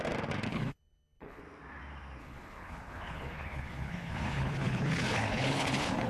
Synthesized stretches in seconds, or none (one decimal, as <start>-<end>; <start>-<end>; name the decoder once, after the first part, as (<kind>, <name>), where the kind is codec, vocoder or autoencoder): 0.5-1.4 (codec, HILCodec); 2.2-6.1